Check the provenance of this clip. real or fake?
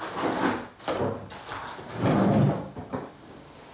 real